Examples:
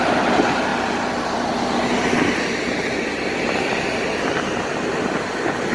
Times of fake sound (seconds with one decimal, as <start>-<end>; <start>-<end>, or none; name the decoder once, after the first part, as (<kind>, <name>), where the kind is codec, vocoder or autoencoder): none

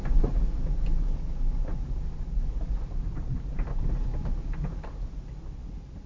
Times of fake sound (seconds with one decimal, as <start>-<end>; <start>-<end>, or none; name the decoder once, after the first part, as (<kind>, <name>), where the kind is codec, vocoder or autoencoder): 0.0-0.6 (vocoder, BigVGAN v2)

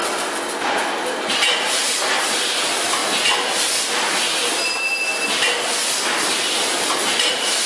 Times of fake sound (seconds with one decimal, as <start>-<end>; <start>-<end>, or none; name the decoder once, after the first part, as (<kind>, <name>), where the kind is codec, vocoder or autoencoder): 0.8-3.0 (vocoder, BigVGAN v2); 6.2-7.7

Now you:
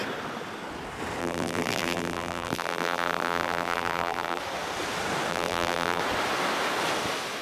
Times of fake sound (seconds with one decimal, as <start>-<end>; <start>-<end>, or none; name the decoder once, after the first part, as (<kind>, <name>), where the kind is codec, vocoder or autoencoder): 1.2-4.4 (vocoder, BigVGAN v2); 5.3-6.0